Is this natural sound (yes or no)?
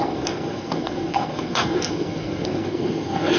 no